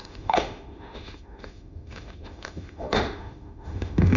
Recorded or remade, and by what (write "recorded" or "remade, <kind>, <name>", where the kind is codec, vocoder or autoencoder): remade, autoencoder, DAC-VAE